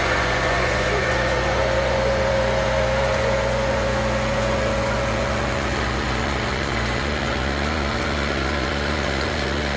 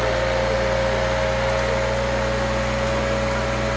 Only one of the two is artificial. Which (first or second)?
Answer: first